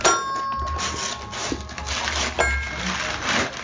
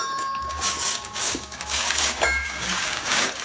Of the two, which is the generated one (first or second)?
second